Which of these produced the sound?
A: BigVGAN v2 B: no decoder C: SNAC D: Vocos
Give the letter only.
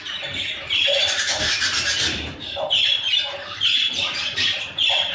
A